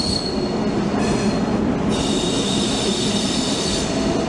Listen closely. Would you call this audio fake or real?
real